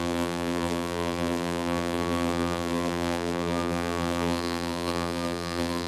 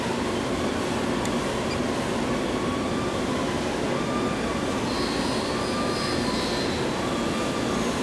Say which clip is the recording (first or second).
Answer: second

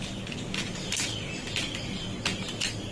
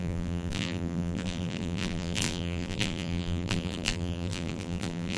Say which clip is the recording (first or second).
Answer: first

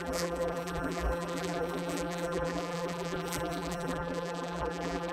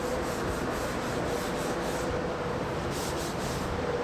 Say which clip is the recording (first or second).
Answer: second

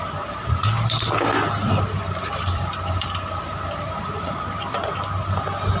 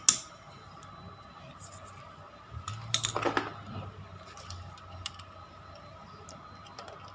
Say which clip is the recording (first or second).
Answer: second